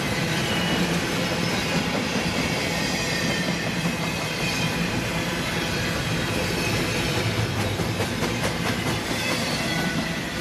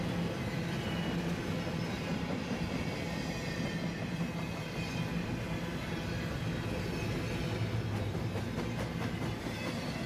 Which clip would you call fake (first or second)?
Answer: first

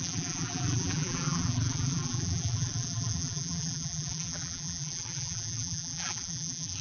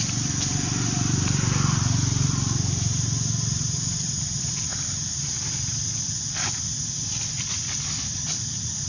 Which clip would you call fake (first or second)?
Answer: first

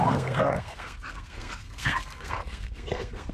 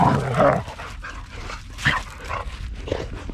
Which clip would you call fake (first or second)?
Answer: first